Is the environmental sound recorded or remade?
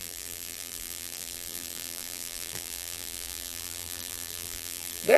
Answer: remade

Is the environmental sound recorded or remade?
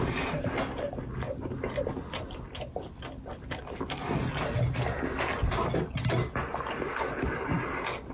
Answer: recorded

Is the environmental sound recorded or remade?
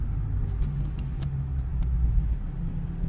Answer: recorded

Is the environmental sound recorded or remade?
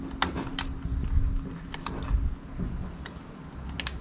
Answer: recorded